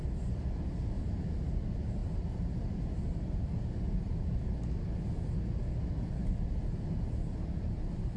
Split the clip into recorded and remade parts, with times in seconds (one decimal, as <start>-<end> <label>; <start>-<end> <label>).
0.0-8.2 recorded